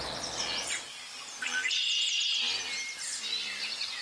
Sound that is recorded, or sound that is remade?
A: recorded